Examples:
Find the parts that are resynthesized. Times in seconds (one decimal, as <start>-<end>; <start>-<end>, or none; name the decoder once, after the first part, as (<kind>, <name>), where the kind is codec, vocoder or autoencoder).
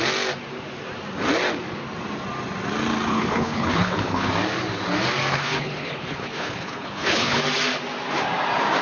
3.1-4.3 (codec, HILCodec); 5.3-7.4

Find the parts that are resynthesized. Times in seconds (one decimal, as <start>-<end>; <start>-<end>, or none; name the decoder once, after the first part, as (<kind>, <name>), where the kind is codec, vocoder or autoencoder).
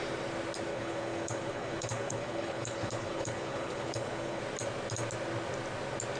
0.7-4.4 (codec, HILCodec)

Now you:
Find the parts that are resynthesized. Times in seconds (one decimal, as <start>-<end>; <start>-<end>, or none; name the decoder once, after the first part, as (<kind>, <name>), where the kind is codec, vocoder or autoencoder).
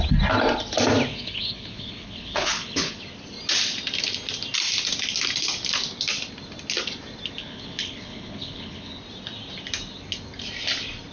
1.1-3.0 (codec, HILCodec); 7.4-9.0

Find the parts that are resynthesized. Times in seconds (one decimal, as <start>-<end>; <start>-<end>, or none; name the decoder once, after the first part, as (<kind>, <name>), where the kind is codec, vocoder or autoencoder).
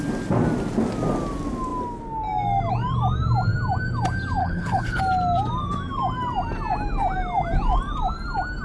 4.4-5.0 (codec, HILCodec)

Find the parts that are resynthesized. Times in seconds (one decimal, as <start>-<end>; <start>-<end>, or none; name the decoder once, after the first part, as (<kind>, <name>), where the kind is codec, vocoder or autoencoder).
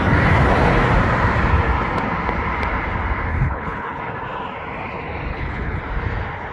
3.3-4.0 (codec, HILCodec); 5.3-5.8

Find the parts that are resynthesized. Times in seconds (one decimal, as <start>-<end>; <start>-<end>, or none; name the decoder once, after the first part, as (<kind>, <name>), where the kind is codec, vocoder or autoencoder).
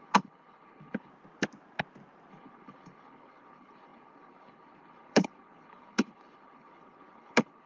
0.0-1.1 (codec, HILCodec); 2.3-7.7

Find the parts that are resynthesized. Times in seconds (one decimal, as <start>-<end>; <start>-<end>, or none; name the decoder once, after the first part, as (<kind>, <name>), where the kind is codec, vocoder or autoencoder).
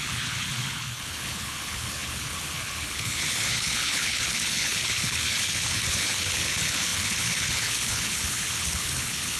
0.0-9.4 (codec, HILCodec)